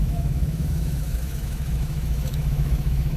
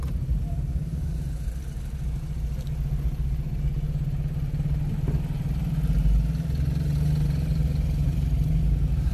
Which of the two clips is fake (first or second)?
first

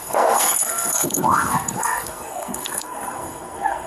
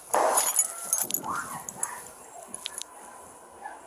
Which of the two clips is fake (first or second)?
first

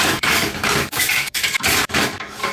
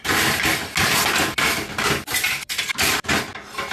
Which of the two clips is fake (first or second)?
first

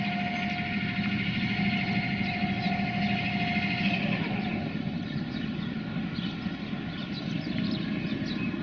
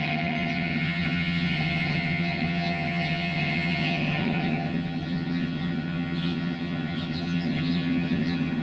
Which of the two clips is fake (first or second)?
second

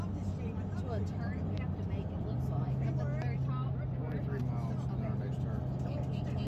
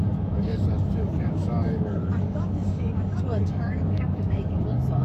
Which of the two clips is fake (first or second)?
second